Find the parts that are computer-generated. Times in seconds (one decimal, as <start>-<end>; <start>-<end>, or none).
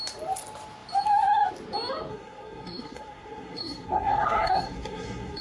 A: 2.1-5.4